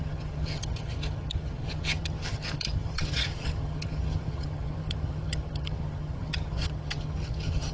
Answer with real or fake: fake